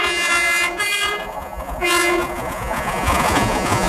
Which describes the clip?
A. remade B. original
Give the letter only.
A